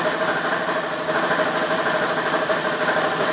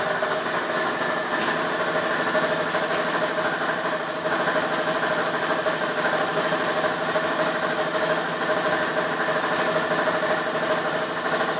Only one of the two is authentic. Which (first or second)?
second